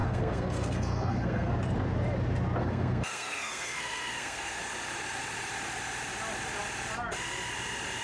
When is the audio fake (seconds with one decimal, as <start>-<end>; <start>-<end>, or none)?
0.0-1.5; 2.6-4.6